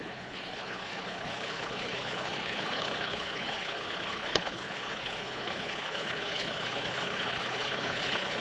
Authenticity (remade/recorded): remade